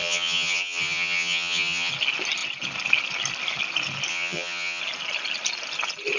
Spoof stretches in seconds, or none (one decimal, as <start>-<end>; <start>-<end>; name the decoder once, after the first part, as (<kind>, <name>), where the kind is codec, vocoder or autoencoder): 0.0-1.9 (vocoder, HiFi-GAN); 4.1-4.8